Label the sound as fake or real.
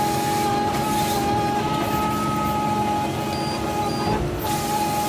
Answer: real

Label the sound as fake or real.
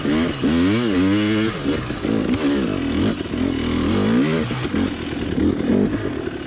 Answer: real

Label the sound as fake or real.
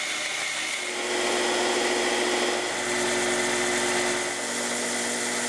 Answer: real